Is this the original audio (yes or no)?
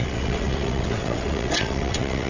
no